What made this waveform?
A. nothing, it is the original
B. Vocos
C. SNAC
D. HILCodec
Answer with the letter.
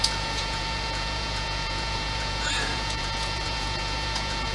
B